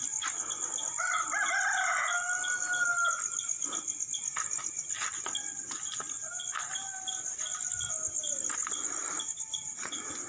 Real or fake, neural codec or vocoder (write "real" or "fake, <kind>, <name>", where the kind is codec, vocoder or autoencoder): real